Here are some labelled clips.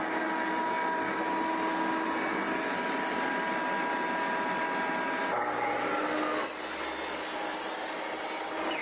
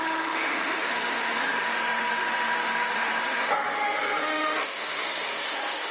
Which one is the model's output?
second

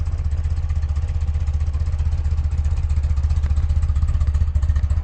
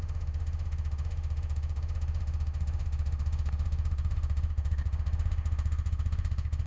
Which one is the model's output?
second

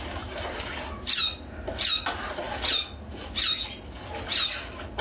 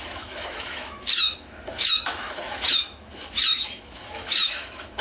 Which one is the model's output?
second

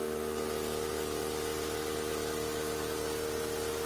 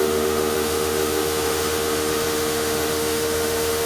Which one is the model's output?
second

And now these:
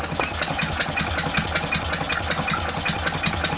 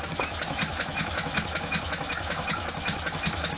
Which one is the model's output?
second